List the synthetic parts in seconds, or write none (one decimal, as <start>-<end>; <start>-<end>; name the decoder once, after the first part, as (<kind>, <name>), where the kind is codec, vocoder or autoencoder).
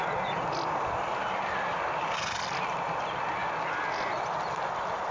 none